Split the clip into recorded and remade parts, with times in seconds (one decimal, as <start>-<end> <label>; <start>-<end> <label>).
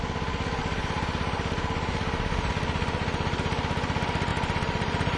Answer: 0.0-0.6 recorded; 0.6-2.5 remade; 2.5-3.0 recorded; 3.0-3.6 remade; 3.6-4.3 recorded; 4.3-5.2 remade